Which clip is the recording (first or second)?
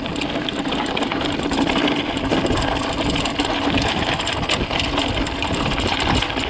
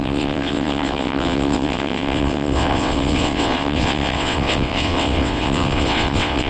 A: first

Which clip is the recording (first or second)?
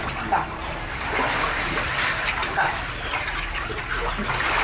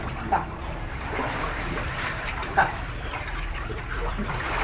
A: first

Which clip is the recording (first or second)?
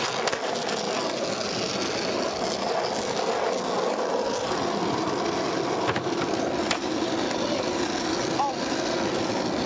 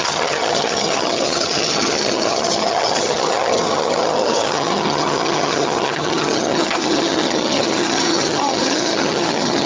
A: first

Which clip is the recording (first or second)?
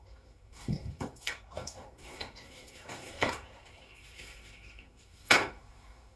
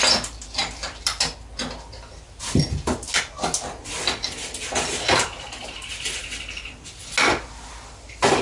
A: second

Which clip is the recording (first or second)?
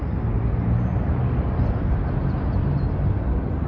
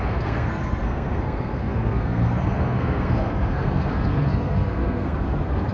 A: first